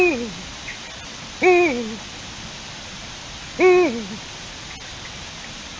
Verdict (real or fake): real